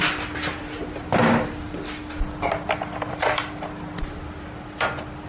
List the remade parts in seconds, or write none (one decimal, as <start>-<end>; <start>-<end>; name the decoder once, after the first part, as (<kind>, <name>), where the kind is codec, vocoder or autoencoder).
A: none

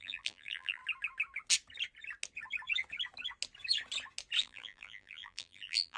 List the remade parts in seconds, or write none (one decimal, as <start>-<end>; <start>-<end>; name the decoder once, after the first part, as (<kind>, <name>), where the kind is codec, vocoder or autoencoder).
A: 0.0-0.8 (vocoder, BigVGAN v2); 4.4-6.0

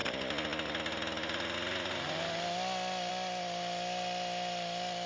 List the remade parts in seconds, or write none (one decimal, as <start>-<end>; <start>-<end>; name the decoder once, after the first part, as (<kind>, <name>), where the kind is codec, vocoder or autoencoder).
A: none